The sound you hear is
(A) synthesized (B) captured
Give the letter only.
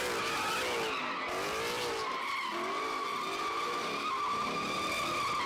B